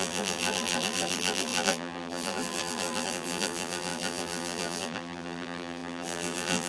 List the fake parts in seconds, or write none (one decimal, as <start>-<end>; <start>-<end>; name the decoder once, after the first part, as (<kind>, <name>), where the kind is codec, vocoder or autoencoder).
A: 0.0-6.7 (vocoder, BigVGAN v2)